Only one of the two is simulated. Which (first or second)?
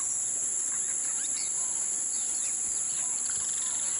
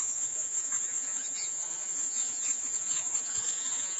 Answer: second